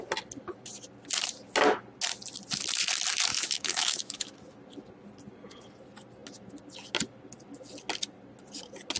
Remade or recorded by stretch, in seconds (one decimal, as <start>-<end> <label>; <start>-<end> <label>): 0.0-3.3 recorded; 3.3-4.3 remade; 4.3-9.0 recorded